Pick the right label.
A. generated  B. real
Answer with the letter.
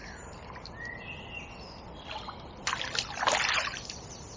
B